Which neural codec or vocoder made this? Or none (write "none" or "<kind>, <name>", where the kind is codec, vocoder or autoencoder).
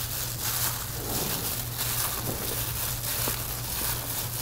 none